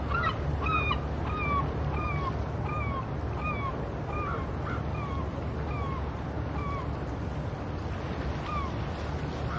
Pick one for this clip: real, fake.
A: real